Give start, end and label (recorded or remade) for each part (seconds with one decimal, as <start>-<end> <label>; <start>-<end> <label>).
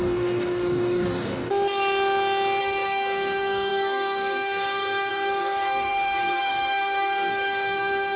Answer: 0.0-1.5 remade; 1.5-2.6 recorded; 2.6-8.2 remade